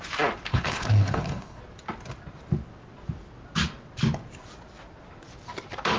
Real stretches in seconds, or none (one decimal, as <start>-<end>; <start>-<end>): 0.0-0.5; 1.6-6.0